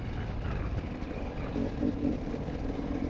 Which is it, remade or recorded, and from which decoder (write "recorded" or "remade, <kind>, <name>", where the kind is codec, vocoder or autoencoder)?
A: recorded